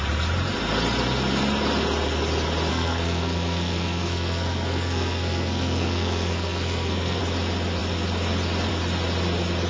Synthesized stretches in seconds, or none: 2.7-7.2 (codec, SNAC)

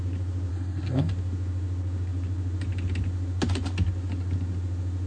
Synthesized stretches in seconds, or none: 0.5-1.1 (codec, SNAC)

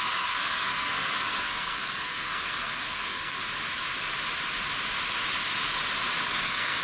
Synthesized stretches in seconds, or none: 0.0-3.4 (codec, SNAC); 6.3-6.8